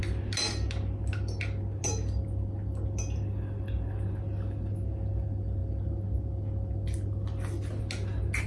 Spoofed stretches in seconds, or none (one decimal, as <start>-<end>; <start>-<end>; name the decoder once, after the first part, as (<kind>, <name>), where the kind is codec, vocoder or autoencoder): none